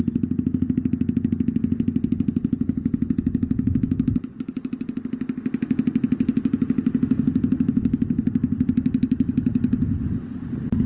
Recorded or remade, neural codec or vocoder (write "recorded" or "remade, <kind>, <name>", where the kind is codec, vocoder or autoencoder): recorded